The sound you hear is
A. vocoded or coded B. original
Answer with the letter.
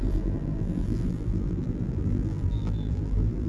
A